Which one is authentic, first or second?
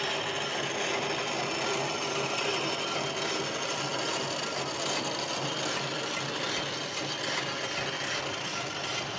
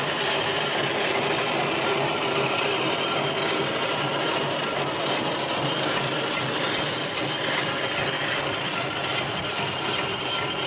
first